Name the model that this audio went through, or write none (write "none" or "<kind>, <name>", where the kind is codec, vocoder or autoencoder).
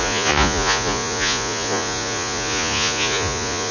vocoder, Vocos